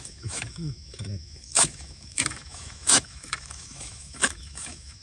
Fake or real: fake